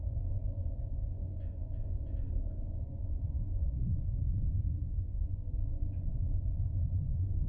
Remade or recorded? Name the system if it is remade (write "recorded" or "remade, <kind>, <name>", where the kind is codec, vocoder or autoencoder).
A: remade, vocoder, Vocos